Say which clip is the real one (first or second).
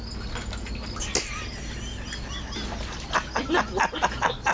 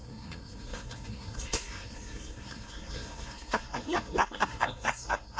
first